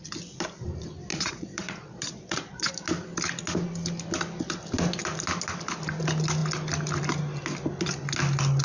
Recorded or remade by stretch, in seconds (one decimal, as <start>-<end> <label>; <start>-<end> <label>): 0.0-1.1 recorded; 1.1-2.7 remade; 2.7-8.6 recorded